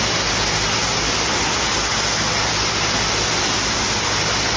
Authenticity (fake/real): real